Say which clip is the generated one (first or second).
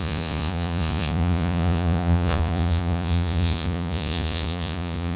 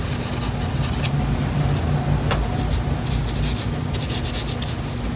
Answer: first